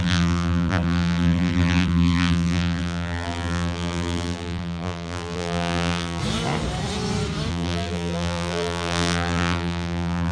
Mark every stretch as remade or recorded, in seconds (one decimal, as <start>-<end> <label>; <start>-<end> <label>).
0.0-6.2 remade; 6.2-7.5 recorded; 7.5-10.3 remade